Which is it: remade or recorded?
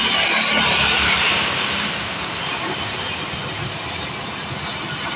recorded